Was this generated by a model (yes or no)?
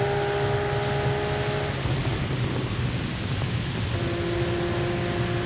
no